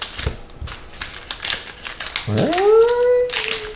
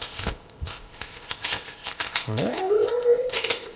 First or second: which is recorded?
first